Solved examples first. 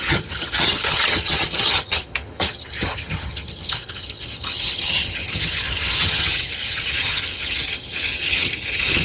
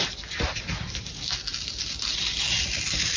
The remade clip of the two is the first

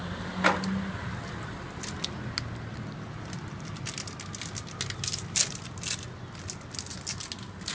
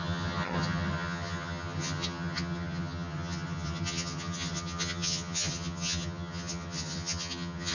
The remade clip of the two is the second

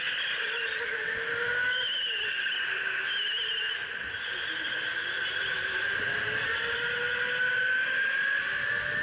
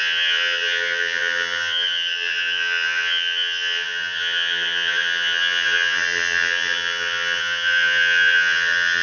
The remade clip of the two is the second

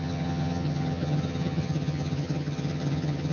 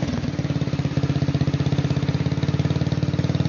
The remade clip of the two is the first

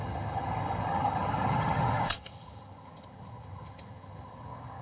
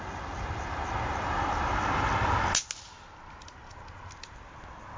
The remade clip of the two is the first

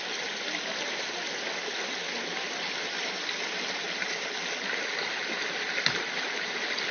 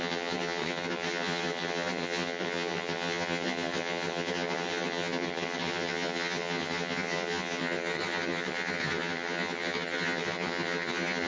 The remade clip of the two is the second